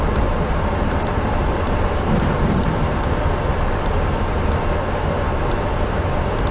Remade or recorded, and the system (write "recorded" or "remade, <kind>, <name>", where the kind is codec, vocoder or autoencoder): remade, vocoder, BigVGAN v2